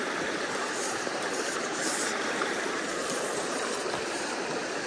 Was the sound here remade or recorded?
remade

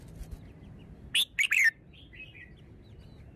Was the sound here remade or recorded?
recorded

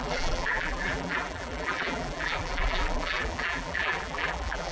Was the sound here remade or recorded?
remade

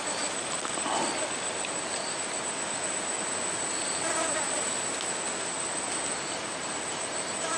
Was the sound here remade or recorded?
recorded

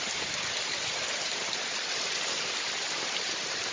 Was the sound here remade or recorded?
remade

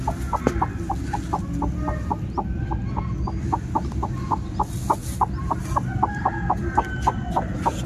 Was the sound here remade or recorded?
recorded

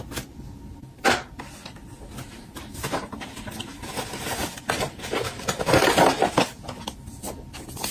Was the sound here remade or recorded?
recorded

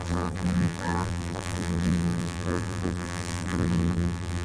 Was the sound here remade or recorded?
remade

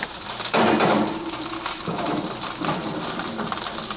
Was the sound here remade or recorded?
remade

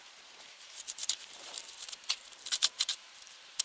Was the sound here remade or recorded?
remade